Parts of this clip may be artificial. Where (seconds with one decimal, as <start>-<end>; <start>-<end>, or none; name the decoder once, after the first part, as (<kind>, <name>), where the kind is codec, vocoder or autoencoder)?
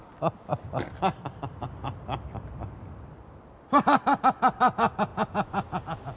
none